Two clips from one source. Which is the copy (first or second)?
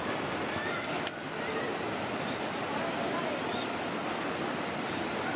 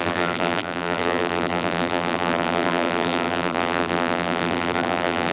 second